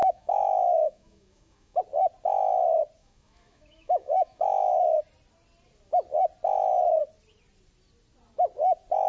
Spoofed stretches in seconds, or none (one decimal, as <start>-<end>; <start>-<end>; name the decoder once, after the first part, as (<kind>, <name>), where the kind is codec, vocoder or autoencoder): 0.0-1.8 (autoencoder, DAC-VAE); 3.0-5.0